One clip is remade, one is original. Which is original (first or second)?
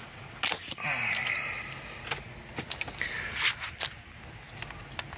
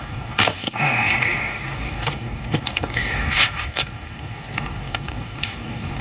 first